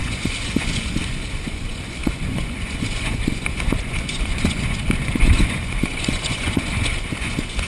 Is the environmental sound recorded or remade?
remade